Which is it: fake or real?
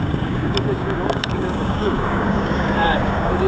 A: fake